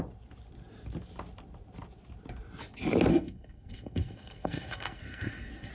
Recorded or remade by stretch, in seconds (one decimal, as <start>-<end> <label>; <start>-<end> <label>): 0.0-3.1 recorded; 3.1-5.7 remade